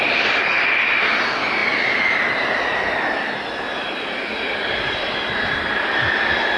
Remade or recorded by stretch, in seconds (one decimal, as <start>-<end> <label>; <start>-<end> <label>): 0.0-6.6 recorded